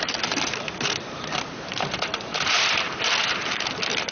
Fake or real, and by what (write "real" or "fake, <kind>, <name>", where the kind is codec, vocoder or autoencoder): fake, vocoder, BigVGAN v2